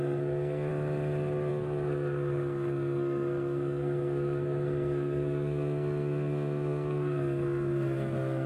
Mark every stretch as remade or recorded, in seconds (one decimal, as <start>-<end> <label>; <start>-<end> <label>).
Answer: 0.0-0.7 remade; 0.7-1.5 recorded; 1.5-8.5 remade